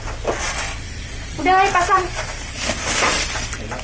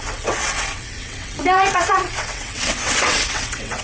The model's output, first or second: second